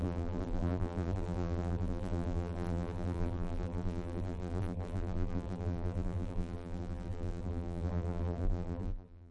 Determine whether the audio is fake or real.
fake